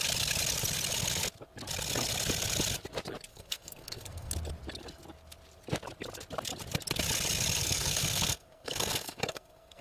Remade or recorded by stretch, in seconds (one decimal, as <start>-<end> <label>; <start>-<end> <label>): 0.0-3.3 recorded; 3.3-4.3 remade; 4.3-7.6 recorded; 7.6-9.8 remade

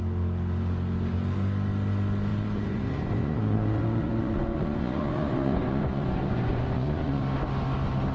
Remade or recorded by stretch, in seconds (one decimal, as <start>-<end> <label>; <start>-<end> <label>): 0.0-2.3 recorded; 2.3-7.2 remade; 7.2-8.1 recorded

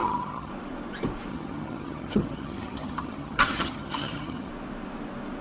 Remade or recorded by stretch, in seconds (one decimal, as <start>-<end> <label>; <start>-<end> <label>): 0.0-0.5 remade; 0.5-1.3 recorded; 1.3-4.5 remade; 4.5-5.4 recorded